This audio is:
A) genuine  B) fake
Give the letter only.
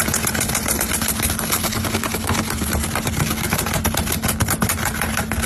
A